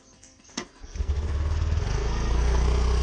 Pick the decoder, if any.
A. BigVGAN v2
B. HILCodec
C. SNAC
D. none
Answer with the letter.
C